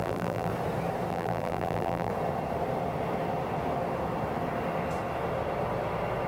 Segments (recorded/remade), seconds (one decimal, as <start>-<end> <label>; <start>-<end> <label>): 0.0-0.5 remade; 0.5-1.1 recorded; 1.1-2.1 remade; 2.1-6.3 recorded